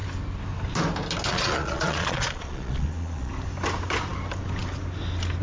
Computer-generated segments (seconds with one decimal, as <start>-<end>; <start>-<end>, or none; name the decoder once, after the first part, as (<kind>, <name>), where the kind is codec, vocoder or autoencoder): 1.3-3.3 (vocoder, Vocos)

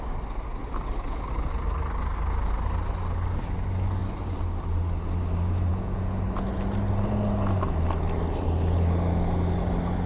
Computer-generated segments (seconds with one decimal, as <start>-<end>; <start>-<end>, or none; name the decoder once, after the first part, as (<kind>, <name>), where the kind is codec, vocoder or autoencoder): 5.7-6.2 (vocoder, Vocos)

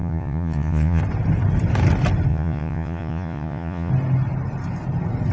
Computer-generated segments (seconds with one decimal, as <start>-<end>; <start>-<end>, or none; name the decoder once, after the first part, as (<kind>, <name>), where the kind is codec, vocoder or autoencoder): 0.0-1.0 (vocoder, Vocos); 2.3-3.9